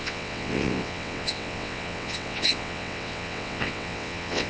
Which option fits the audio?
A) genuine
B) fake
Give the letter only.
B